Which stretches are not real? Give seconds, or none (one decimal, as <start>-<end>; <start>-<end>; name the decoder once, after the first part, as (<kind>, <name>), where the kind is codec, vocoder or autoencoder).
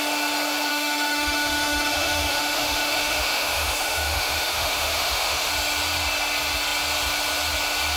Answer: 0.7-5.5 (autoencoder, DAC-VAE)